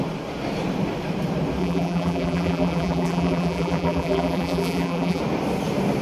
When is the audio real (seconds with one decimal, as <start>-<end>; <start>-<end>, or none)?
0.0-1.6; 5.2-6.0